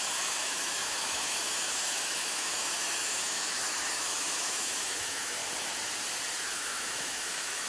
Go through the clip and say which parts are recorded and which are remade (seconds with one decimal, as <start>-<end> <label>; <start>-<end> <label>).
0.0-5.4 remade; 5.4-6.5 recorded; 6.5-7.7 remade

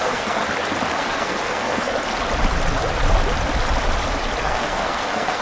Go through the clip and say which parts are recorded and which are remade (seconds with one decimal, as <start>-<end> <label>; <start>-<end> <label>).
0.0-0.4 remade; 0.4-0.9 recorded; 0.9-1.9 remade; 1.9-4.4 recorded; 4.4-5.4 remade

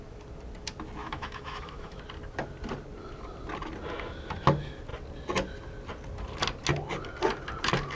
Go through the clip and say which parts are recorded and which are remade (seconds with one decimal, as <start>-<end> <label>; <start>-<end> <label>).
0.0-1.0 recorded; 1.0-2.0 remade; 2.0-8.0 recorded